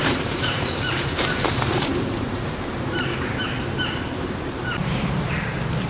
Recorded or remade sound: remade